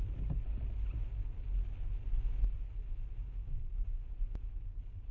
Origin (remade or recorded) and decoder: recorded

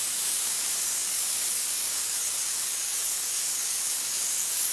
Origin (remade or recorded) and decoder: remade, codec, DAC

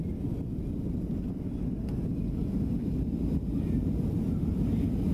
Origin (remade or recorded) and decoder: recorded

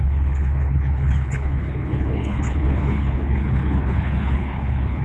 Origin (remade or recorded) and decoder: remade, codec, HILCodec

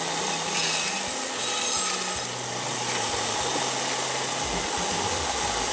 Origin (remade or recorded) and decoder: recorded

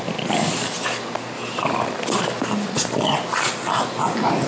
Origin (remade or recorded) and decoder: recorded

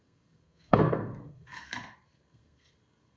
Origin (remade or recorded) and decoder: remade, codec, SNAC